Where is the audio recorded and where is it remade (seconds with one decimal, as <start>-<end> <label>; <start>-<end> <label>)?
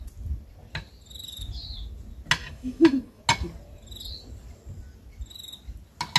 0.0-2.4 recorded; 2.4-3.2 remade; 3.2-6.2 recorded